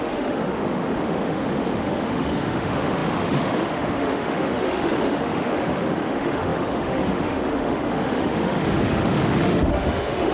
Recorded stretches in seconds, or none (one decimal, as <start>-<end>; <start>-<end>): none